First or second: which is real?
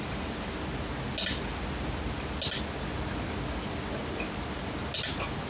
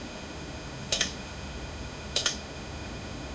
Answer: first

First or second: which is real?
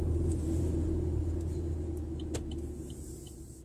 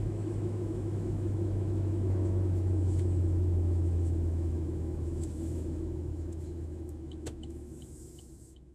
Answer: first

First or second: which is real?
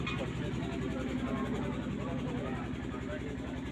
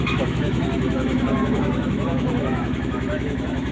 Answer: first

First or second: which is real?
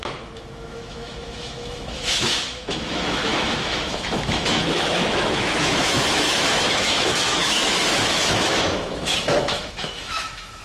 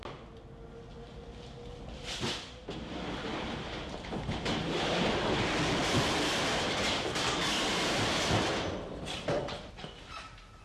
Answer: second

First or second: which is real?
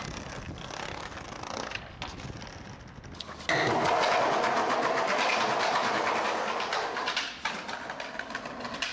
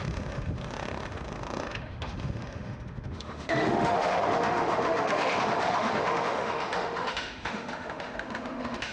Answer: first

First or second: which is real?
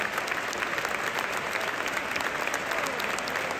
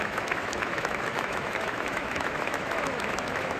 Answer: first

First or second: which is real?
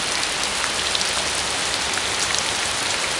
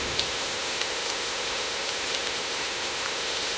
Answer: first